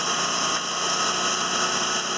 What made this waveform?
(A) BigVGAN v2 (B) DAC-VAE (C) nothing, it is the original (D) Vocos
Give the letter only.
C